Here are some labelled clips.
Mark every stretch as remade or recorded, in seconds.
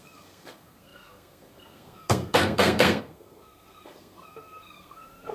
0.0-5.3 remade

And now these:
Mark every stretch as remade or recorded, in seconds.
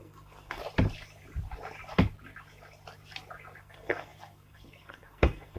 0.0-0.6 remade; 0.6-3.6 recorded; 3.6-5.6 remade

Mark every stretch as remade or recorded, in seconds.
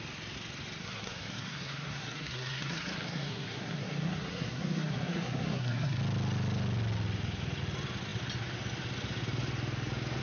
0.0-0.8 recorded; 0.8-6.0 remade; 6.0-10.2 recorded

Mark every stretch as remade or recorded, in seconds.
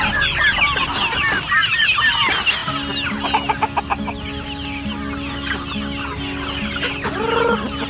0.0-7.9 recorded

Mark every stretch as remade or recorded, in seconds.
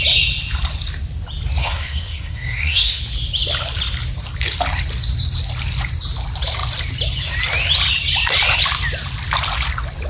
0.0-1.6 recorded; 1.6-3.0 remade; 3.0-10.1 recorded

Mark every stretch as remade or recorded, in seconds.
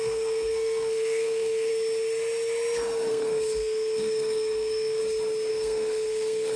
0.0-1.7 remade; 1.7-3.1 recorded; 3.1-5.0 remade; 5.0-5.5 recorded; 5.5-6.6 remade